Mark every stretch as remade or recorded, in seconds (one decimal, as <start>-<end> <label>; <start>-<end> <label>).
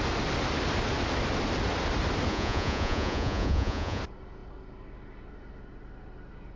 0.0-2.3 recorded; 2.3-4.0 remade; 4.0-6.6 recorded